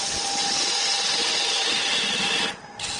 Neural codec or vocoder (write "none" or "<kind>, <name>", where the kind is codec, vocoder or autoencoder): none